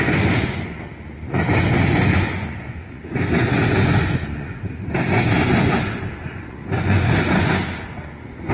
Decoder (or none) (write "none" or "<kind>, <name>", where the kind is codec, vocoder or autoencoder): vocoder, Vocos